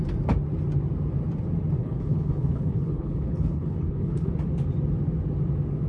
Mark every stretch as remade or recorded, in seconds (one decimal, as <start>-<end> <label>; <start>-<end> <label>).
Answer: 0.0-1.8 recorded; 1.8-4.3 remade; 4.3-5.9 recorded